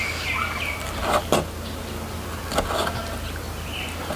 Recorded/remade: recorded